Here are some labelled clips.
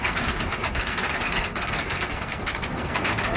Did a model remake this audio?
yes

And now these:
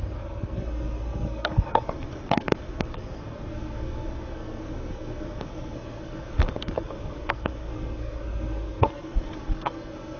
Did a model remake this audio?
yes